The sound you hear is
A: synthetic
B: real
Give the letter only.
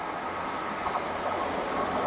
B